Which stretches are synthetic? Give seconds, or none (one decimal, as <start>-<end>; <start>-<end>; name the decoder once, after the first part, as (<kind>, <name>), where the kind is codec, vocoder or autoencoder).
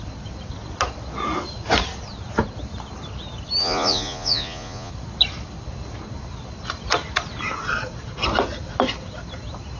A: 3.6-4.9 (vocoder, Vocos)